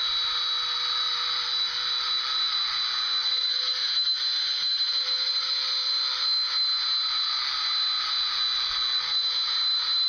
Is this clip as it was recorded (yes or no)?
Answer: yes